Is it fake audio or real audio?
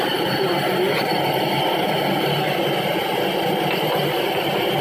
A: real